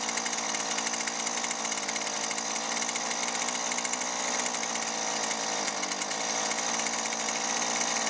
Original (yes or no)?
yes